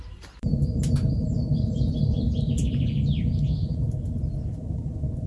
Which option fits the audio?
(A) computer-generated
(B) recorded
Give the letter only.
A